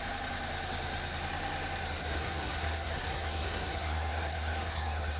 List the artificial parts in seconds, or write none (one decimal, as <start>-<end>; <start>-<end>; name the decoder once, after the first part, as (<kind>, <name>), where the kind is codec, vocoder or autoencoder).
2.0-5.2 (codec, SNAC)